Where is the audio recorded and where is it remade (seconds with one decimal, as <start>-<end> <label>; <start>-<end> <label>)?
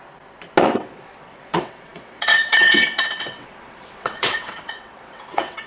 0.0-0.6 recorded; 0.6-5.7 remade